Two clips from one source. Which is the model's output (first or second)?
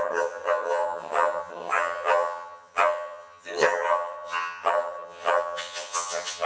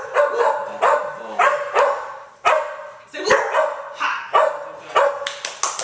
first